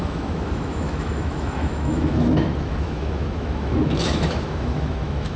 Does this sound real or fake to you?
fake